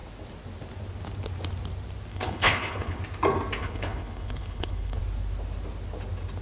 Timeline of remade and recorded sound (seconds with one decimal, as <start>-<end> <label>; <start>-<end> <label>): 0.0-2.1 recorded; 2.1-3.0 remade; 3.0-3.6 recorded; 3.6-5.0 remade; 5.0-6.4 recorded